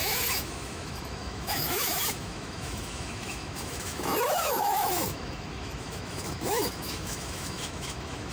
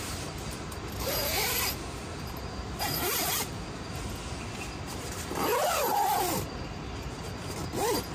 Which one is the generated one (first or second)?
first